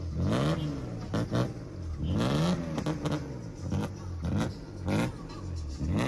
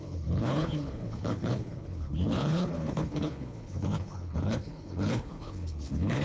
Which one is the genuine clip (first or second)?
first